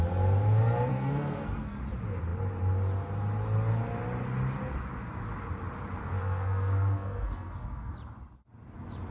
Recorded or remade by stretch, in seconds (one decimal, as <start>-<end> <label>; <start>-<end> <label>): 0.0-0.9 recorded; 0.9-1.8 remade; 1.8-6.0 recorded; 6.0-7.9 remade; 7.9-9.1 recorded